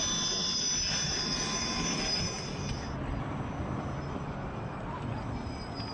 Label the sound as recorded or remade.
recorded